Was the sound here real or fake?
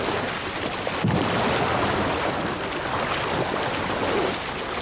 real